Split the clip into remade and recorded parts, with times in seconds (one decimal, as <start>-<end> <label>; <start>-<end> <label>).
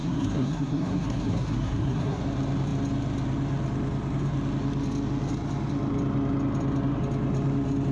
0.0-2.2 remade; 2.2-7.9 recorded